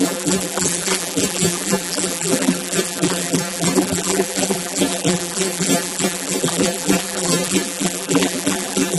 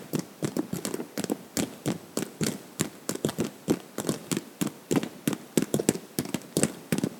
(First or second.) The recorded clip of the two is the second